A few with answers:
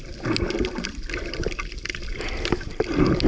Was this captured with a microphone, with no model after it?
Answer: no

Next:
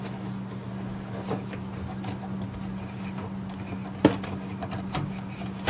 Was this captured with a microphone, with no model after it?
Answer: yes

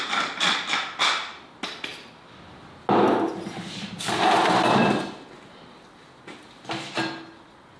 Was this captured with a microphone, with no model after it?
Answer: yes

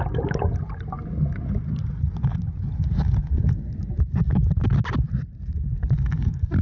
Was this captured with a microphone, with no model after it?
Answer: yes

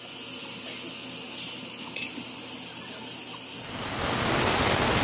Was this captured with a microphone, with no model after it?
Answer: yes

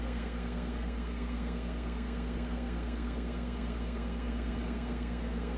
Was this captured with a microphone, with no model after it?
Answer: no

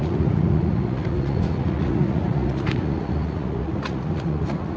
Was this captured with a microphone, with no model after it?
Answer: no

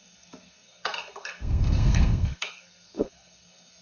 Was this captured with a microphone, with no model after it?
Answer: no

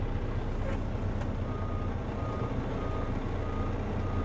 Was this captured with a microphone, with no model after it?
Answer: yes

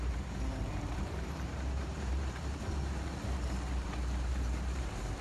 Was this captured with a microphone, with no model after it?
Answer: no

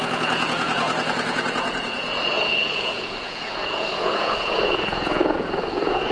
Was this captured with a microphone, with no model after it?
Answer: no